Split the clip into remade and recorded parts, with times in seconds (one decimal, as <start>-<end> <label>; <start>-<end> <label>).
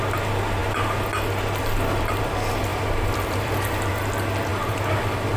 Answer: 0.0-2.7 recorded; 2.7-3.9 remade; 3.9-5.4 recorded